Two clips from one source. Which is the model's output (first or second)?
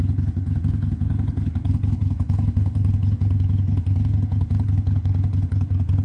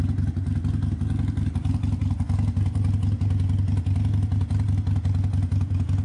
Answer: first